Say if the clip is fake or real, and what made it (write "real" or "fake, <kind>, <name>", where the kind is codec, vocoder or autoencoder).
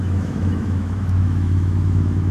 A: fake, autoencoder, DAC-VAE